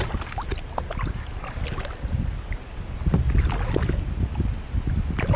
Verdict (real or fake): real